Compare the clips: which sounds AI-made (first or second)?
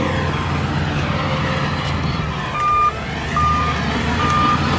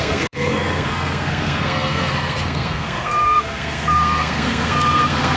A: second